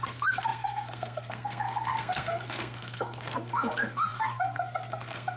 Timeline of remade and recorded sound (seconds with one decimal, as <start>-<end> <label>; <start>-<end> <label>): 0.0-5.4 remade